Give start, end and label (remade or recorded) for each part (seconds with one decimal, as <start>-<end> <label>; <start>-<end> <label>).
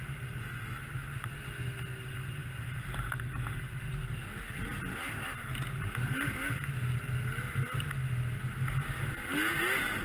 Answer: 0.0-10.0 recorded